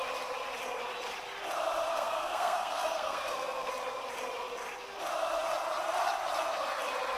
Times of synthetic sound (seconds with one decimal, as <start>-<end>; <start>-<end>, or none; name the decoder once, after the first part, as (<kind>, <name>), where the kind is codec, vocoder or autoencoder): 1.9-3.7 (codec, SNAC)